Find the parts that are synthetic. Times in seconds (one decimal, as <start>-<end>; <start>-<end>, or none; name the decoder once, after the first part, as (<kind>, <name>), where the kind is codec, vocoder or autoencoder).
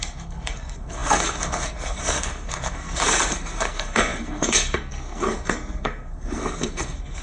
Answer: 0.0-7.2 (codec, SNAC)